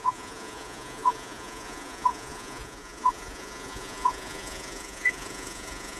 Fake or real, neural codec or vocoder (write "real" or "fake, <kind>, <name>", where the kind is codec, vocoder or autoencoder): fake, vocoder, Vocos